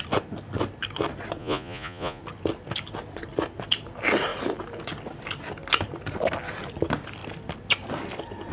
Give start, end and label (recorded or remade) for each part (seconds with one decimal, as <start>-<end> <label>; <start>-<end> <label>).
0.0-1.4 recorded; 1.4-2.2 remade; 2.2-8.5 recorded